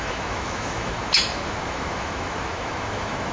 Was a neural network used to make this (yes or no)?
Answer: yes